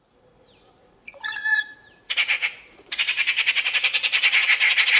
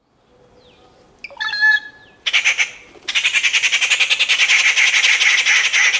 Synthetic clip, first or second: first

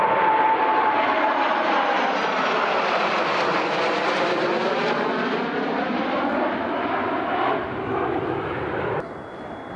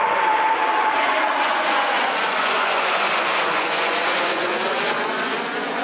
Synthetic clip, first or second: second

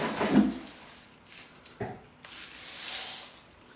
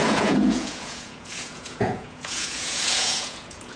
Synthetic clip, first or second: second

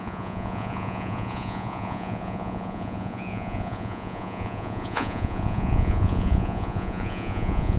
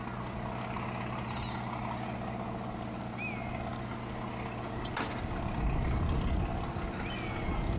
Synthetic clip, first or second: first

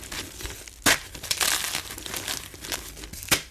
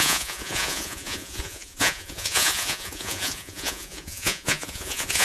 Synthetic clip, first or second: second